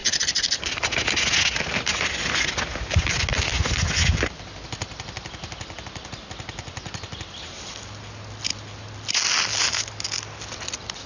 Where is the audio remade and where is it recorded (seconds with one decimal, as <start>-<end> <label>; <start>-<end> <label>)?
0.0-11.1 recorded